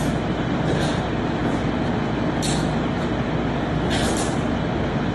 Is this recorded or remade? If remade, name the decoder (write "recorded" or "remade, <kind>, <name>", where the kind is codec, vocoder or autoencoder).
recorded